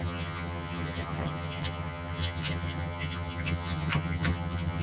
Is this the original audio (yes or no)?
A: no